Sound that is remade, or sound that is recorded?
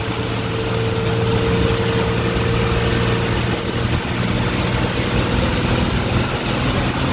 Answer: recorded